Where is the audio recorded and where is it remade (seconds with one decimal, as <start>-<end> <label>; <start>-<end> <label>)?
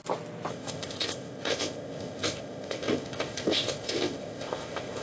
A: 0.0-0.5 recorded; 0.5-5.0 remade